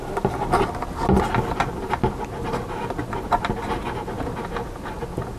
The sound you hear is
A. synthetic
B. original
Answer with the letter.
B